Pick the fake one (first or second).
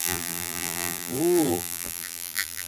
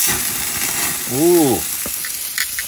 first